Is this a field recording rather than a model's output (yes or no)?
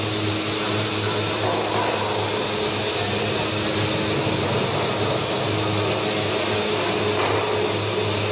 yes